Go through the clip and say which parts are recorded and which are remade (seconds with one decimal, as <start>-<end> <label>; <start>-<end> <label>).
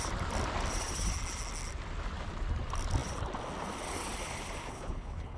0.0-4.6 recorded; 4.6-5.4 remade